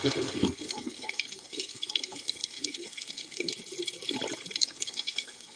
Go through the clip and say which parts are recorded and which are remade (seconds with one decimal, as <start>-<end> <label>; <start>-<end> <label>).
0.0-3.5 remade; 3.5-4.6 recorded; 4.6-5.6 remade